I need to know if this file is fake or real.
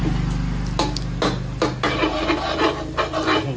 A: real